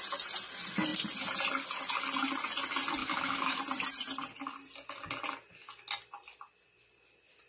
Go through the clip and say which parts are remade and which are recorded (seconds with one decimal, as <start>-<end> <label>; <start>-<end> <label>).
0.0-3.0 recorded; 3.0-3.6 remade; 3.6-7.5 recorded